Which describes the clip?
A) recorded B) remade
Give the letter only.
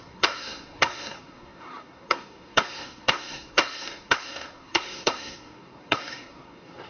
B